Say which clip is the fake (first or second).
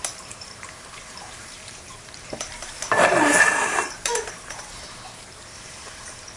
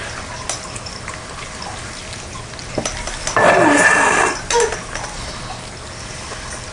first